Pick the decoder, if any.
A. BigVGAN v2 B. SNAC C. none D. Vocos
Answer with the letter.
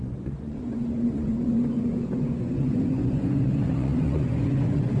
D